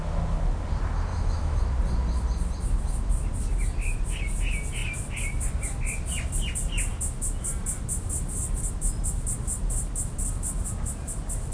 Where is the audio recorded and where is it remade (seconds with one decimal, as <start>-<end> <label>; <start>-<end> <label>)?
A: 0.0-1.1 recorded; 1.1-1.6 remade; 1.6-11.5 recorded